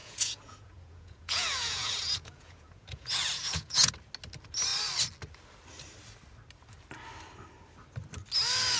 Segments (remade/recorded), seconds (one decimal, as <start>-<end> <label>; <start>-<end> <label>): 0.0-3.9 remade; 3.9-8.8 recorded